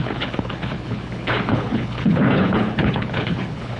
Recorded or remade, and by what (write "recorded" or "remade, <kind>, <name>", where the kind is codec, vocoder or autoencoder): remade, codec, HILCodec